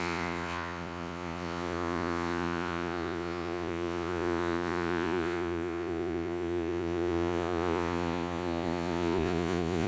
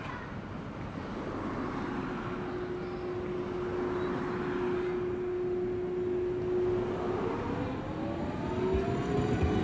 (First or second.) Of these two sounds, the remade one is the first